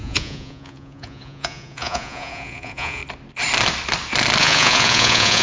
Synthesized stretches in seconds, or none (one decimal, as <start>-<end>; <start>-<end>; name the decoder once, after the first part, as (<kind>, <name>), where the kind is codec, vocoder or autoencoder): 0.0-3.0 (vocoder, Vocos); 4.4-5.4